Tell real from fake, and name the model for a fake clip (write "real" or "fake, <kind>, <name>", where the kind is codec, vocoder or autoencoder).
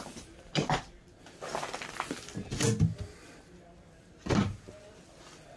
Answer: real